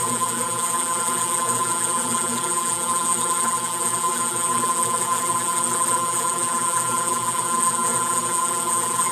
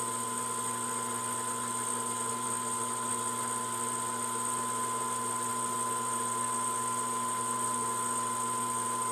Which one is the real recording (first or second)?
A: second